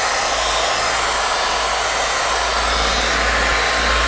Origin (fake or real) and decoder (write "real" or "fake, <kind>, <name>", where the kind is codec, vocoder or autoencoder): real